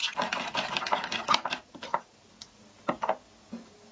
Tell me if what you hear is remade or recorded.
recorded